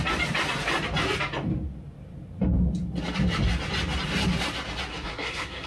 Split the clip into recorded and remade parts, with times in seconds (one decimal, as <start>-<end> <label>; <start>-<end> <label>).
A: 0.0-4.9 recorded; 4.9-5.7 remade